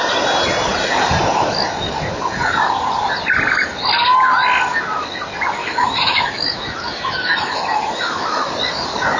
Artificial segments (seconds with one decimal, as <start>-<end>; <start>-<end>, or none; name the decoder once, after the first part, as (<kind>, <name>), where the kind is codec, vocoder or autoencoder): 5.6-8.5 (autoencoder, DAC-VAE)